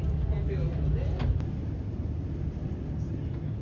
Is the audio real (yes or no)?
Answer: yes